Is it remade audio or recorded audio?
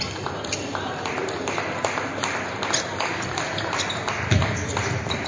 recorded